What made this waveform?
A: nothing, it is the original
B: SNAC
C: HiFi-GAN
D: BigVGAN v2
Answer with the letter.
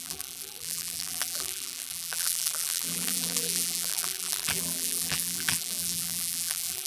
D